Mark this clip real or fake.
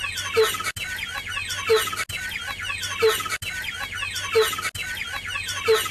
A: real